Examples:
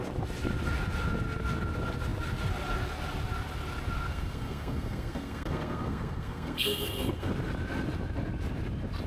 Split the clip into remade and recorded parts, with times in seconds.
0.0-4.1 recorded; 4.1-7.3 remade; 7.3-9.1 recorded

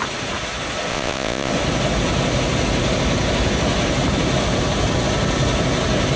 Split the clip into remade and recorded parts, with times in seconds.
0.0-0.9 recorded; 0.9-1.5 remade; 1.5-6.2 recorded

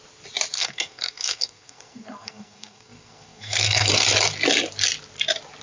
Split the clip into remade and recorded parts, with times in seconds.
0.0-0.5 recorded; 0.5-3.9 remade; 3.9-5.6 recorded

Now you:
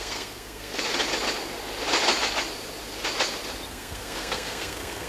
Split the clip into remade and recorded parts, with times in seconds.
0.0-0.8 remade; 0.8-3.7 recorded; 3.7-5.1 remade